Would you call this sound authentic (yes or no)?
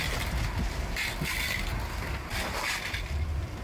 yes